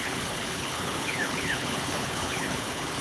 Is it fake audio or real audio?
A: fake